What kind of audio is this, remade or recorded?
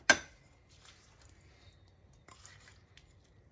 recorded